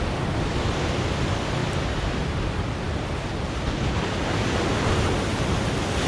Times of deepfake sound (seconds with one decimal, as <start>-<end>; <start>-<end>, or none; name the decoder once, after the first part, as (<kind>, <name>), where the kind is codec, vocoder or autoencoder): none